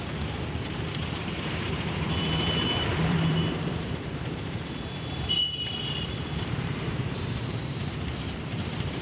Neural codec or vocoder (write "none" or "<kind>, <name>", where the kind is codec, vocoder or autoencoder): vocoder, BigVGAN v2